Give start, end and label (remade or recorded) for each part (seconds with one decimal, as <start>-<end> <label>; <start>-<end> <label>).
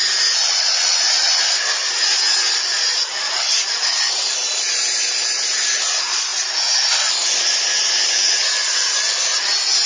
0.0-4.7 remade; 4.7-9.9 recorded